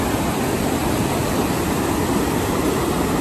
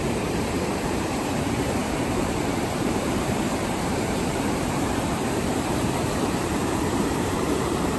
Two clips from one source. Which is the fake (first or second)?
second